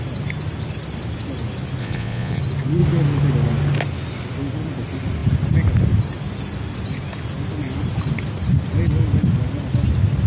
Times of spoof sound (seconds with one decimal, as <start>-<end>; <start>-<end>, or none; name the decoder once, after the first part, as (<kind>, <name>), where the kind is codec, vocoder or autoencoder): 1.8-2.4 (vocoder, Vocos)